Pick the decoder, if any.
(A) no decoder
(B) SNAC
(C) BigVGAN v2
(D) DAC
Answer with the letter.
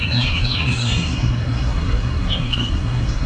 B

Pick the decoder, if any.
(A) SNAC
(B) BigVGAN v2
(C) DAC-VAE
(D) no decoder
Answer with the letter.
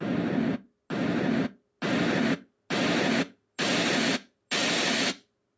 D